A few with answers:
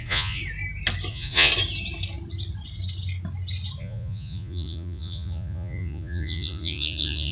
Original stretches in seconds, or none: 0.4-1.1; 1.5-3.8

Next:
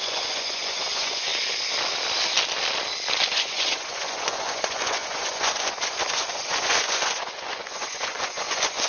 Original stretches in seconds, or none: 1.3-3.3